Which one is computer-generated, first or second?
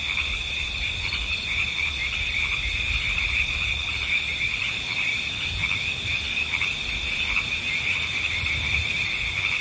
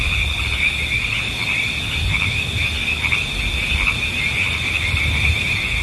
first